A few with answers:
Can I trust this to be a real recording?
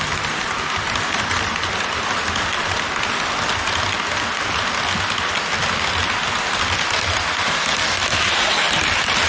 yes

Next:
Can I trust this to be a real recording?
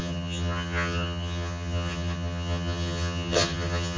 no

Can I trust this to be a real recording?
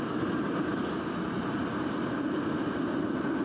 yes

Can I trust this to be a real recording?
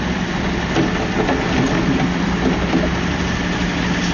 yes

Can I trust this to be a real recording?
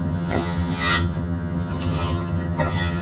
no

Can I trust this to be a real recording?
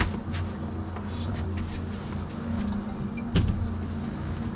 yes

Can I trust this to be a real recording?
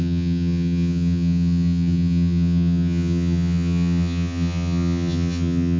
no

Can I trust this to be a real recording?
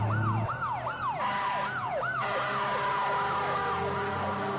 yes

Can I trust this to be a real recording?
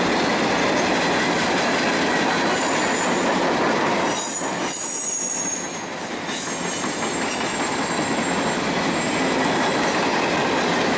yes